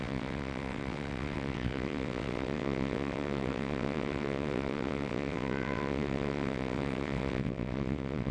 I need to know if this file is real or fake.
fake